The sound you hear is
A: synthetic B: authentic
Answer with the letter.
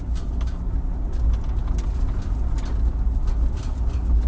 B